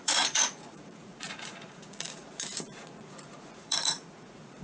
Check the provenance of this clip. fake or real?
fake